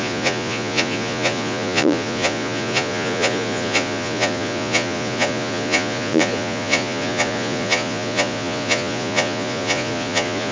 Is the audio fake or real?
fake